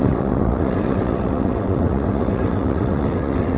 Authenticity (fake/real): fake